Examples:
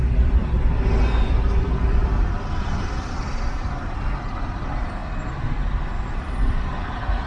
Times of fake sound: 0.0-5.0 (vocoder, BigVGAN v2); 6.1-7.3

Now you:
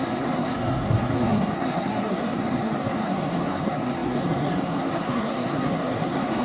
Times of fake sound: 0.0-6.4 (codec, SNAC)

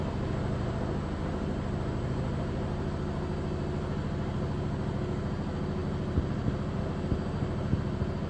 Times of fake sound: none

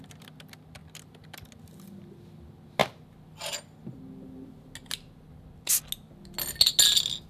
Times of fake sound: none

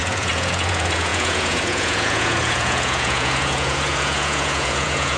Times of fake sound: 0.0-5.2 (vocoder, Vocos)

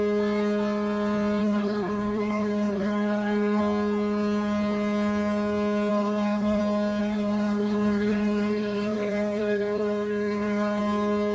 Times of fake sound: 1.4-3.6 (codec, SNAC); 5.9-6.6; 7.0-10.8

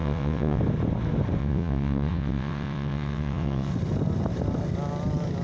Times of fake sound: 0.0-0.6 (vocoder, WaveNeXt); 1.4-3.7